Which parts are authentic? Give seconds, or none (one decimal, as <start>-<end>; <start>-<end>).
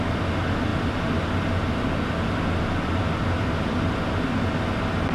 0.0-5.1